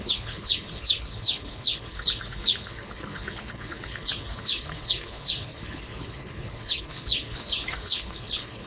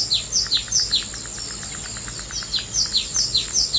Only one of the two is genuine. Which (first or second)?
second